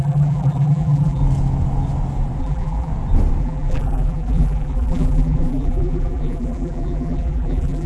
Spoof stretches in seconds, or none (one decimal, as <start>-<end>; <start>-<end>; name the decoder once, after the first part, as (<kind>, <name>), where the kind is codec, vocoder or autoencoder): 0.0-1.2 (vocoder, BigVGAN v2); 2.4-2.9; 3.4-7.9